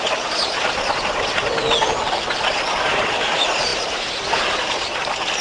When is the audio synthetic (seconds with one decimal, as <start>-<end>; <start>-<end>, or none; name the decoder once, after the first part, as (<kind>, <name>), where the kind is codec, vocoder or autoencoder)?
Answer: 0.0-1.3 (vocoder, BigVGAN v2); 2.5-5.4